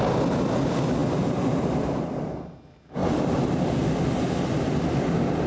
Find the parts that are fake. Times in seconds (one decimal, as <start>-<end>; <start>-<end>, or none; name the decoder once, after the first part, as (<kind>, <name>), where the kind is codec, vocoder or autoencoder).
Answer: none